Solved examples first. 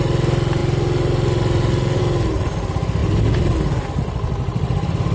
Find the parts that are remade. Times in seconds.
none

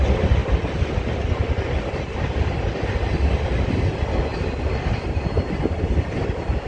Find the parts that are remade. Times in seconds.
none

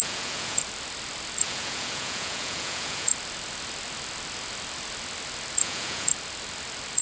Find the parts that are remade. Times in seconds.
0.0-0.6; 1.4-3.1; 5.6-6.1

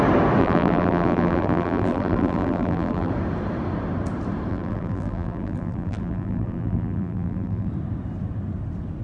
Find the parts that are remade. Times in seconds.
0.4-3.1; 4.5-7.7

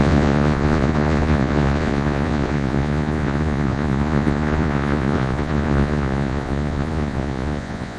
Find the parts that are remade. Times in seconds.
0.0-8.0